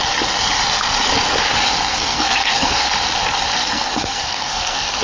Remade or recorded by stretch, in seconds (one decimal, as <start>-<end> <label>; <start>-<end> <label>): 0.0-1.9 recorded; 1.9-2.9 remade; 2.9-3.6 recorded; 3.6-5.0 remade